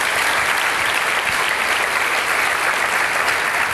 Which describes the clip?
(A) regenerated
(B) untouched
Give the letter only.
B